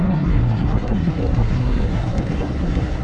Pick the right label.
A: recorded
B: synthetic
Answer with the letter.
B